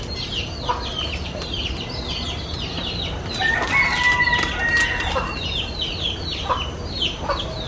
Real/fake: real